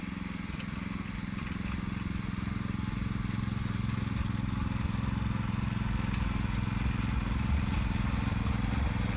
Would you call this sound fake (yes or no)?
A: no